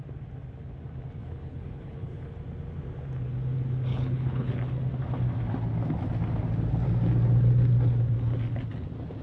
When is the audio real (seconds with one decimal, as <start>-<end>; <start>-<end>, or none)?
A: 0.0-1.2; 2.3-3.9; 4.5-9.2